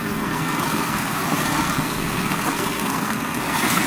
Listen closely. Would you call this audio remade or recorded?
remade